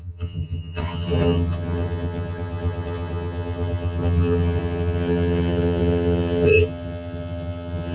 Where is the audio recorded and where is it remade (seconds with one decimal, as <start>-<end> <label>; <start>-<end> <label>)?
0.0-7.9 remade